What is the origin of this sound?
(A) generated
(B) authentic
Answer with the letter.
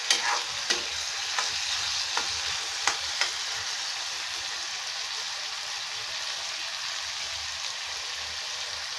B